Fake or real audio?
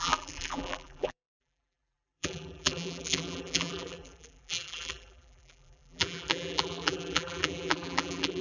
fake